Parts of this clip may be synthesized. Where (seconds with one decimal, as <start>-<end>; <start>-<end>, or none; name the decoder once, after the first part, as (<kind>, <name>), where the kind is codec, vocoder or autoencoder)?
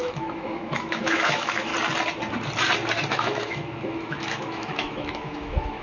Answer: 0.0-1.7 (autoencoder, DAC-VAE); 3.1-5.8